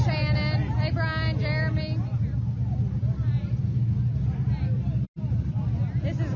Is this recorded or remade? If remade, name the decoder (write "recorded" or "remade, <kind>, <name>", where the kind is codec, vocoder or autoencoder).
recorded